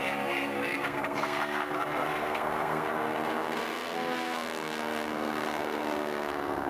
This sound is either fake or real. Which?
fake